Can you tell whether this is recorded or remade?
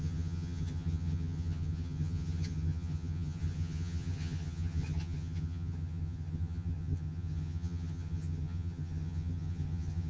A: remade